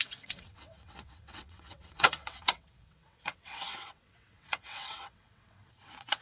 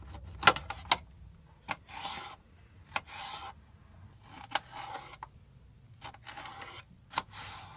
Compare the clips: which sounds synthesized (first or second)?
first